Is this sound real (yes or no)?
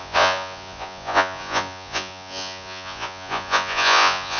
no